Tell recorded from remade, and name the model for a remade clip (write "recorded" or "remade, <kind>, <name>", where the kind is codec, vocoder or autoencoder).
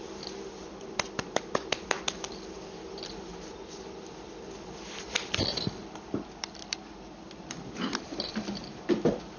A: remade, vocoder, BigVGAN v2